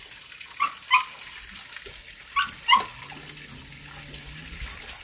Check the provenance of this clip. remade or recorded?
recorded